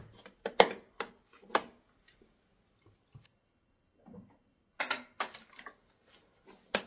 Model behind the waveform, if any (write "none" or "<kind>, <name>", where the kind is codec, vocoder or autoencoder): none